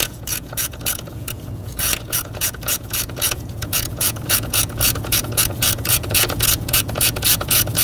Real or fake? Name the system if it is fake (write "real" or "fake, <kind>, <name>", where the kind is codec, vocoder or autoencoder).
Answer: fake, vocoder, Vocos